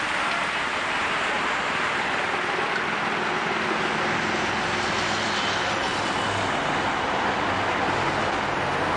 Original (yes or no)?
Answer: yes